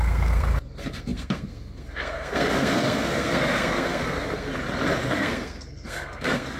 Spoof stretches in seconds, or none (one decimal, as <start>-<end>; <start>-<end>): 0.0-4.5; 5.1-6.6